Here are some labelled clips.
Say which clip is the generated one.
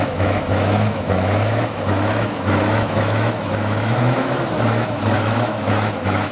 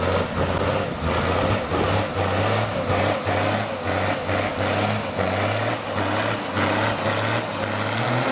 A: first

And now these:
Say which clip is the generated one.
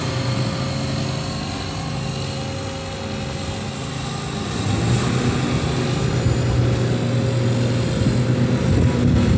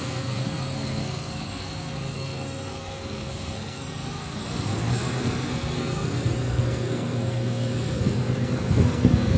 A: second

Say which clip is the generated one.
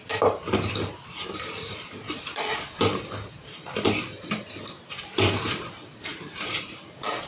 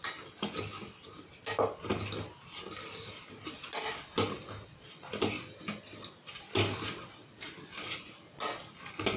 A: first